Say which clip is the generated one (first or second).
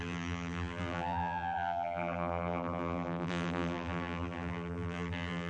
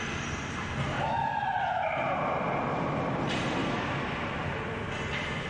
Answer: first